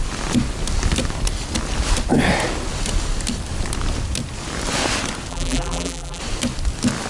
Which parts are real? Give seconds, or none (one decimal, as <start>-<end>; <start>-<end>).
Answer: 0.0-5.3; 6.2-7.1